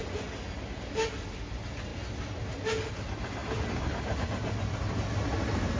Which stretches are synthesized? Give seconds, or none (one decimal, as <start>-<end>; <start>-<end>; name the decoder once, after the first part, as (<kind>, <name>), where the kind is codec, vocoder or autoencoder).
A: none